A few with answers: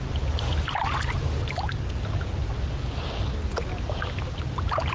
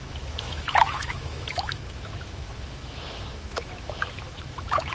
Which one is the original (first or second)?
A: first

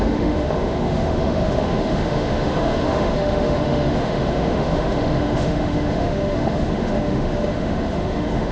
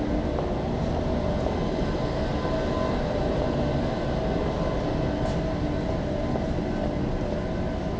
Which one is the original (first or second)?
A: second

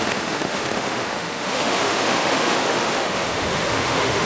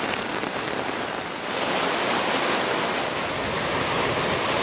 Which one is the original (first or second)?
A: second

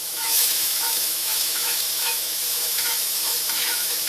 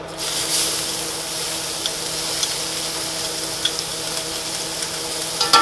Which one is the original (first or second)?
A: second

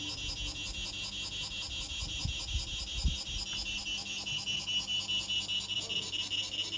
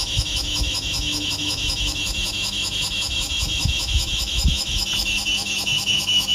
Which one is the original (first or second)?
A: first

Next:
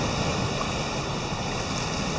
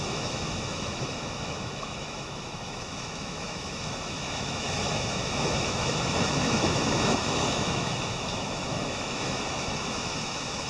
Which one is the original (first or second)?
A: first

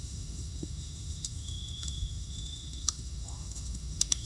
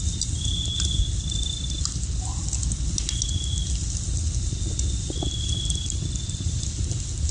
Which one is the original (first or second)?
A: second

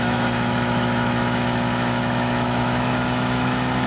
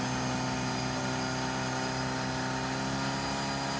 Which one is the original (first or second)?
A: second